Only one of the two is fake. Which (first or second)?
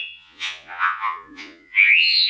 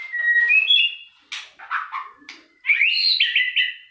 first